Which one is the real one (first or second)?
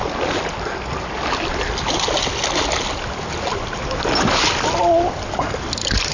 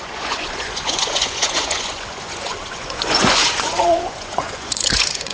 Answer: first